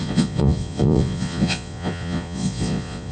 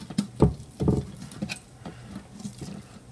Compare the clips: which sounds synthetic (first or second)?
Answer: first